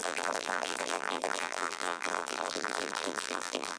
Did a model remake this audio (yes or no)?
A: yes